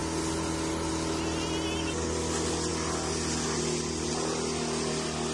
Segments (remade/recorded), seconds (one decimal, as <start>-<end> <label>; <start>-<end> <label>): 0.0-5.3 recorded